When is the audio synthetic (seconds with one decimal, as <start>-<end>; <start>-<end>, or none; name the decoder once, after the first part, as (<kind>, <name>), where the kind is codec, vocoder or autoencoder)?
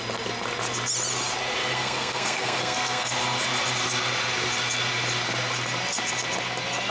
1.6-3.1 (codec, SNAC)